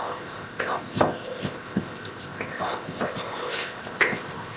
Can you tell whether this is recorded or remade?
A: remade